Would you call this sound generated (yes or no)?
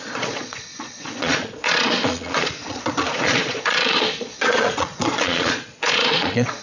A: yes